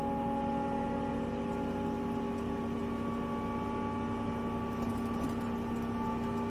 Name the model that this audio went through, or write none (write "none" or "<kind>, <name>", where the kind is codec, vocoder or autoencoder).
none